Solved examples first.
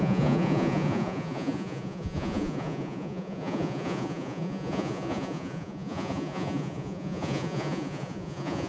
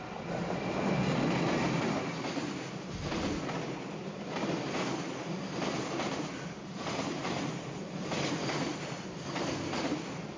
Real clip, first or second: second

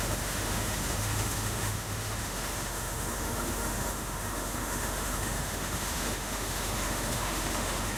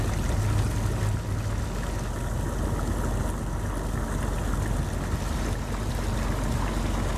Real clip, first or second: second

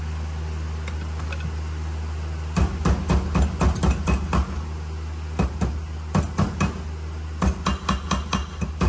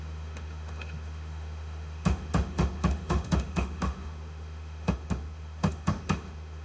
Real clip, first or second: first